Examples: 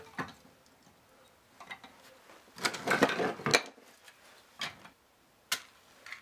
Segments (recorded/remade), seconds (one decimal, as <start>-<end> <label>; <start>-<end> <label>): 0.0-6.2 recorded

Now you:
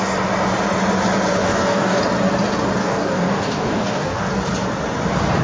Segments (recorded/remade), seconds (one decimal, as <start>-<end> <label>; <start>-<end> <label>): 0.0-1.4 recorded; 1.4-2.0 remade; 2.0-2.8 recorded; 2.8-4.3 remade; 4.3-5.4 recorded

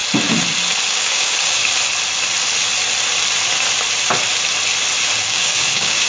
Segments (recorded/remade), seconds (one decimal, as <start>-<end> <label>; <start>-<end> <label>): 0.0-0.9 recorded; 0.9-1.6 remade; 1.6-5.2 recorded; 5.2-6.1 remade